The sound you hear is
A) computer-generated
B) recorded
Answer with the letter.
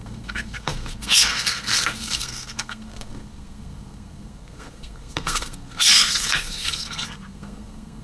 A